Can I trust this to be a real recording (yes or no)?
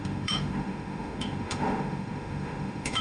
no